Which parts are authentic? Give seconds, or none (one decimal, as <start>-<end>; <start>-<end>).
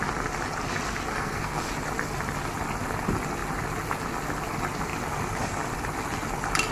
0.0-1.1; 1.6-6.7